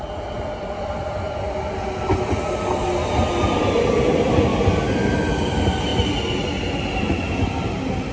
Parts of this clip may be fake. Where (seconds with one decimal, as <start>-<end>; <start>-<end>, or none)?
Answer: none